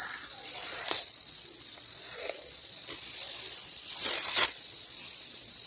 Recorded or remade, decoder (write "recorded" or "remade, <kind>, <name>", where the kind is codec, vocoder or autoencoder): remade, vocoder, Vocos